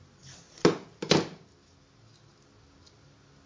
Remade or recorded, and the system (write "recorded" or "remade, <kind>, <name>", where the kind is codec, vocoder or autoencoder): recorded